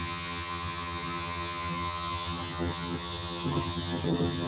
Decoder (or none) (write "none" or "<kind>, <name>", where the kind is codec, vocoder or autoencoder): vocoder, HiFi-GAN